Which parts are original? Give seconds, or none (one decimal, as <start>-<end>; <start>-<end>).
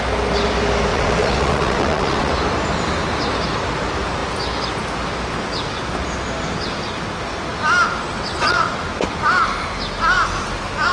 0.0-0.9; 2.3-8.1; 8.7-10.9